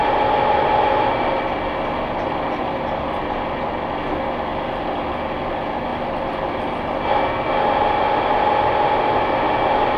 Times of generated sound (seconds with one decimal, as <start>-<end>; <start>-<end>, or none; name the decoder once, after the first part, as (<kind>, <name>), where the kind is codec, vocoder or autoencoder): none